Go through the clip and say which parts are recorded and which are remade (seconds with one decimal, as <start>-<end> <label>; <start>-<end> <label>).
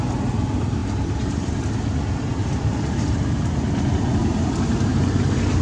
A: 0.0-0.8 recorded; 0.8-1.6 remade; 1.6-2.4 recorded; 2.4-3.4 remade; 3.4-4.2 recorded; 4.2-4.9 remade; 4.9-5.6 recorded